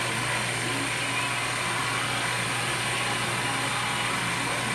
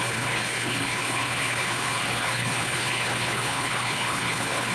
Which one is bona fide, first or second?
first